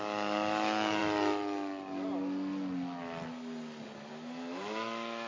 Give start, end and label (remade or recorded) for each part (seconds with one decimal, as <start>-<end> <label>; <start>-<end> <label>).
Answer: 0.0-1.0 remade; 1.0-4.1 recorded; 4.1-5.3 remade